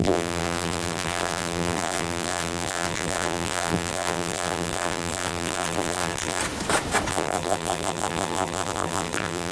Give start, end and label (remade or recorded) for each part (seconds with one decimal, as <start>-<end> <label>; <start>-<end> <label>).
0.0-6.4 remade; 6.4-7.1 recorded; 7.1-9.5 remade